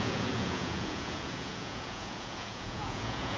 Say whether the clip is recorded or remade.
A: remade